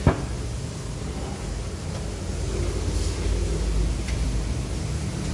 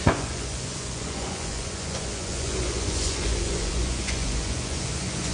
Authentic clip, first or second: first